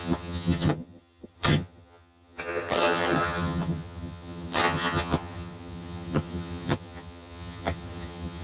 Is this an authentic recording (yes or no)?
no